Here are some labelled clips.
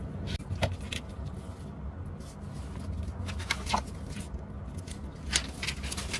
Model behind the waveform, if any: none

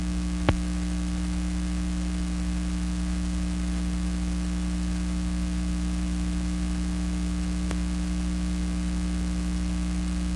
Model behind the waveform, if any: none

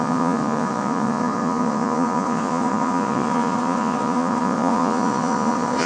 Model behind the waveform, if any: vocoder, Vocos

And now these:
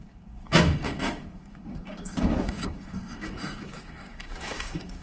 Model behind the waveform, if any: codec, DAC